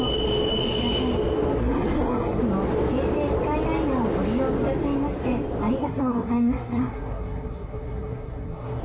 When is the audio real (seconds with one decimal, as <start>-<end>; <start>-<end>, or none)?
0.0-1.6; 2.4-5.8